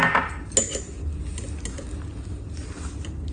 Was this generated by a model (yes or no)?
no